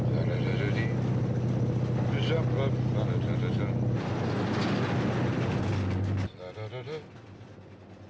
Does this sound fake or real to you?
real